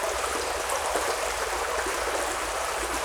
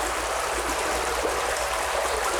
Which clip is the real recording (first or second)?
second